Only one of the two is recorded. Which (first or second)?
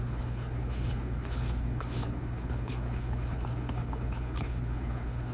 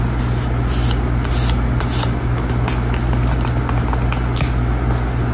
second